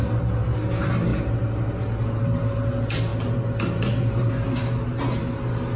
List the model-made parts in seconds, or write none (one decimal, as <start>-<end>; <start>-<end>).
none